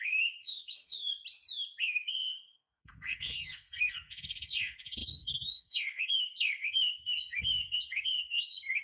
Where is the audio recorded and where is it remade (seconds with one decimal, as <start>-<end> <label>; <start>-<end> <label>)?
0.0-1.1 remade; 1.1-1.8 recorded; 1.8-8.8 remade